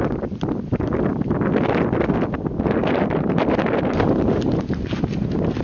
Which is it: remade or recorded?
recorded